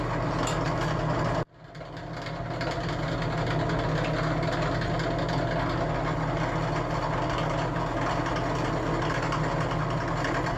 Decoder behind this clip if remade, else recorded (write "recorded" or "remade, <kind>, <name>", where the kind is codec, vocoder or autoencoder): recorded